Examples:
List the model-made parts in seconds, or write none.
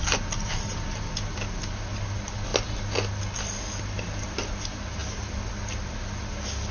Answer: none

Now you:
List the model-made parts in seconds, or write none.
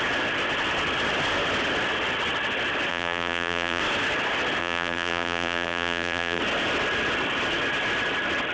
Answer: 2.9-3.8 (vocoder, BigVGAN v2); 4.6-6.4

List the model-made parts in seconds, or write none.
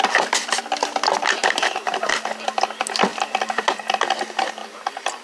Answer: 1.4-2.1 (vocoder, BigVGAN v2); 3.1-4.0; 4.6-5.2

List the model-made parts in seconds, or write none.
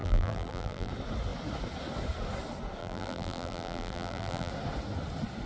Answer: 0.0-0.9 (vocoder, BigVGAN v2); 2.8-4.5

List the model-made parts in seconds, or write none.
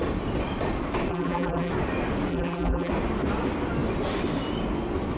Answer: 1.1-1.7 (vocoder, BigVGAN v2); 2.3-2.9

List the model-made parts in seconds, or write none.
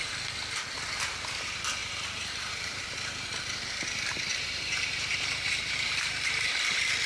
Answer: 1.8-2.8 (vocoder, BigVGAN v2); 4.3-6.5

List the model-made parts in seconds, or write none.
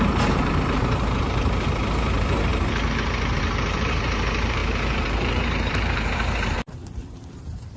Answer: 0.0-7.8 (vocoder, BigVGAN v2)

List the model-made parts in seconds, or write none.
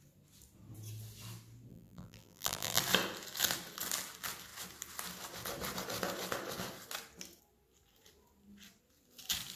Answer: 1.7-2.8 (vocoder, BigVGAN v2)